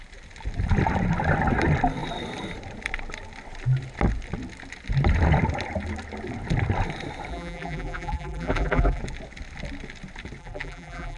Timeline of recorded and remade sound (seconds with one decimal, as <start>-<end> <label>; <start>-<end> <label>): 0.0-7.3 recorded; 7.3-9.0 remade; 9.0-10.4 recorded; 10.4-11.2 remade